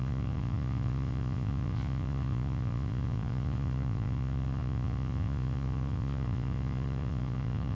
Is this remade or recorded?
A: remade